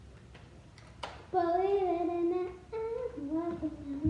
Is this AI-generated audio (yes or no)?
no